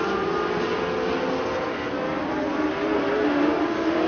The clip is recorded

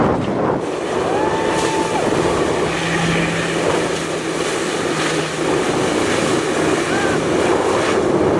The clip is recorded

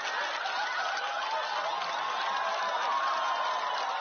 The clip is recorded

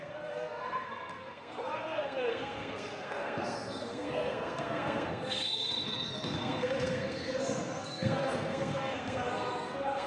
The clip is remade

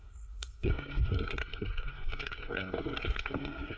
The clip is remade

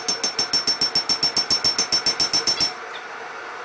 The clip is recorded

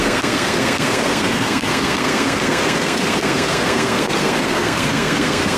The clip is remade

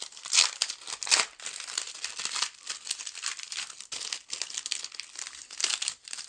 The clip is recorded